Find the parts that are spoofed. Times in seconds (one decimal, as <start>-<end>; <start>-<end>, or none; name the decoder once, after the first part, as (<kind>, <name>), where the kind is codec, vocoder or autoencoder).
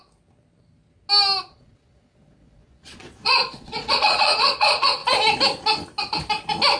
1.5-5.0 (vocoder, Vocos)